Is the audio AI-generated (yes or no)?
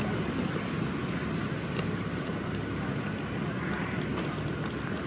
no